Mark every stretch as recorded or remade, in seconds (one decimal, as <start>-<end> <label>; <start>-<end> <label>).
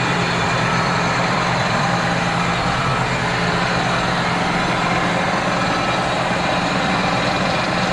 0.0-2.9 remade; 2.9-6.5 recorded; 6.5-7.9 remade